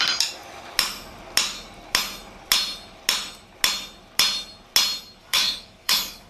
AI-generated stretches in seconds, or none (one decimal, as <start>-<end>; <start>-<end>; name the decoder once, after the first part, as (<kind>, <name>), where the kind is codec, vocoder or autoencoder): 5.2-6.3 (codec, DAC)